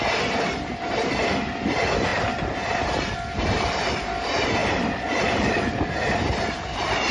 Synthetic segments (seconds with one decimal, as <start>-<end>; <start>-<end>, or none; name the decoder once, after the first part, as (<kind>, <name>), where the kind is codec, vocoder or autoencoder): 4.6-5.9 (vocoder, BigVGAN v2)